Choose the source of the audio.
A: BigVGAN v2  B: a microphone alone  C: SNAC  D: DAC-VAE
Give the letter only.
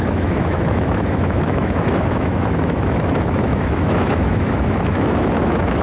D